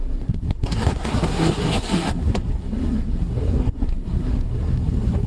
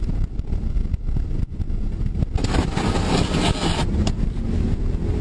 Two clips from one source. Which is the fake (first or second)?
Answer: first